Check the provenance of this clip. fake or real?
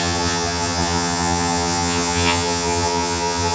fake